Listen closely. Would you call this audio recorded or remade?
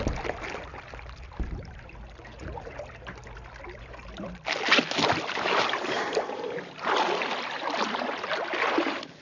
recorded